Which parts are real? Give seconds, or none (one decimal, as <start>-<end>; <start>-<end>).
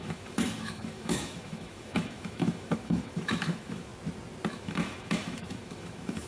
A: 3.9-4.5